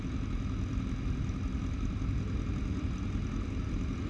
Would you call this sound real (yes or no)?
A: yes